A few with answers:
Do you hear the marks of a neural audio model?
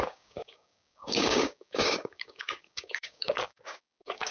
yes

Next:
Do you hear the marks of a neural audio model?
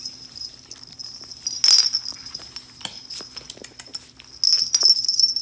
no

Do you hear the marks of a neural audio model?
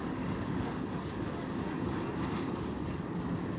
yes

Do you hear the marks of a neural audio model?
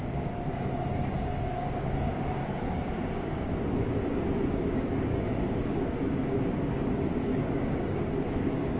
yes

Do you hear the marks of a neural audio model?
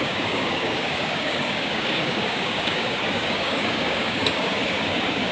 yes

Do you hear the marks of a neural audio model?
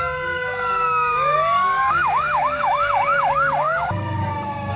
yes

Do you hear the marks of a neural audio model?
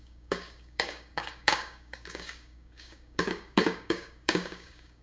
yes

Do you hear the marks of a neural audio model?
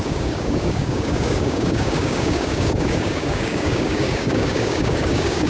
yes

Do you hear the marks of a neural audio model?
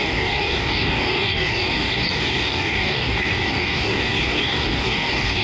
yes